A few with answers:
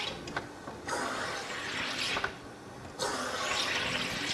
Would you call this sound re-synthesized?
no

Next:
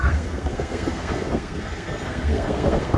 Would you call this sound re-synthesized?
yes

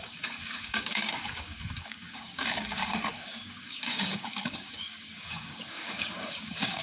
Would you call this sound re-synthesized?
yes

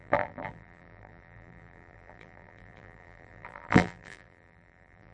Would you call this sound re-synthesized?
yes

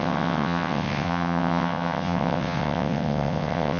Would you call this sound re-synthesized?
yes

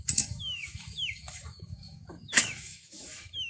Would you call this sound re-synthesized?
yes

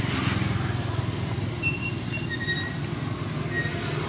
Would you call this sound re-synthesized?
no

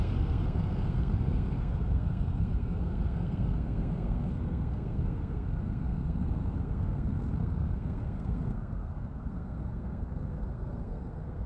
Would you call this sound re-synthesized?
yes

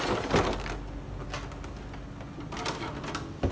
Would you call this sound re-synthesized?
no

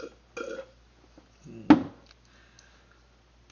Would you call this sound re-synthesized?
no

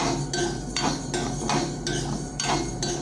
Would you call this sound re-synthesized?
no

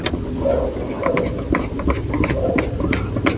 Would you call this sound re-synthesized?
no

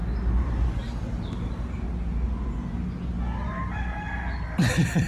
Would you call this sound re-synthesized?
no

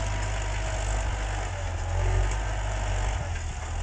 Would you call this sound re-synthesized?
no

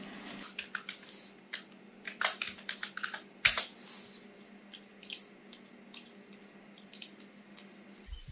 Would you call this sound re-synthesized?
no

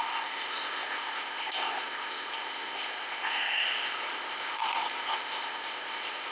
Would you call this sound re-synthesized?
yes